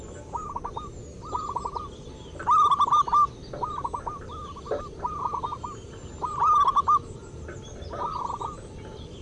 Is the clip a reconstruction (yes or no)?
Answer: no